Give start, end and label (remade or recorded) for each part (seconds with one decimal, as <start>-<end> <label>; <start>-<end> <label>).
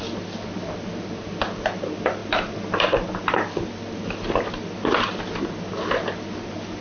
0.0-6.8 recorded